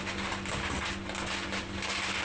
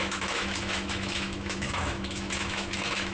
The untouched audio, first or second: first